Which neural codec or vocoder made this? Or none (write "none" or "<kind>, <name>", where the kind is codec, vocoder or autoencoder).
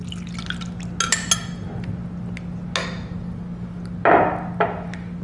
none